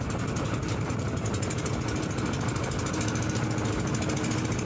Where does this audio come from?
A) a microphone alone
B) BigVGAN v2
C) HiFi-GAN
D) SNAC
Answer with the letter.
A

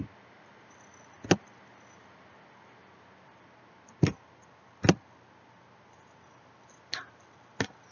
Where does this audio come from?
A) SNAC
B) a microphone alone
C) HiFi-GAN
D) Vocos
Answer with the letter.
B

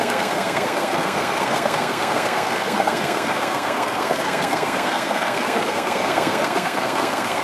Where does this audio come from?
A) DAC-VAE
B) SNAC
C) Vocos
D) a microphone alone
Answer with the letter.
B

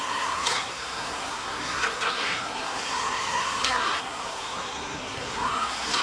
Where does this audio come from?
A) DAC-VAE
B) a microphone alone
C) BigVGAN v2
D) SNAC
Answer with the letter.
D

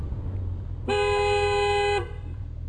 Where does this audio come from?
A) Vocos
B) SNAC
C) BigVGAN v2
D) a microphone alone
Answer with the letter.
D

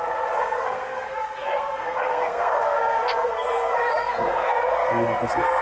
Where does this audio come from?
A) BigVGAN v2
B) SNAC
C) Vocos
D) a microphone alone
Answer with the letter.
B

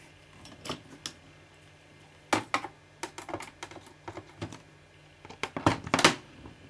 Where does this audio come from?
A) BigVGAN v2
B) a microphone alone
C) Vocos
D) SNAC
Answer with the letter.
B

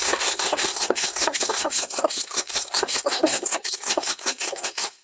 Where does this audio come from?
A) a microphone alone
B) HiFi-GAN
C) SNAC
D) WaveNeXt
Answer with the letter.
C